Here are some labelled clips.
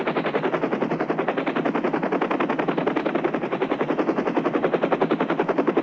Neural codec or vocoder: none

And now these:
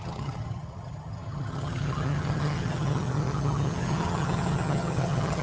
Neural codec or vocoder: vocoder, HiFi-GAN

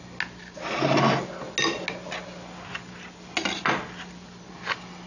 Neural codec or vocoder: none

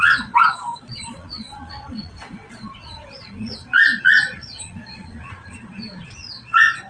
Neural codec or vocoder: vocoder, Vocos